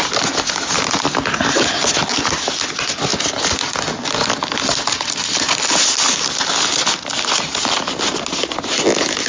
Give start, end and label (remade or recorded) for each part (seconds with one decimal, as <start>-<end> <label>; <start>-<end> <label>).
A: 0.0-9.3 recorded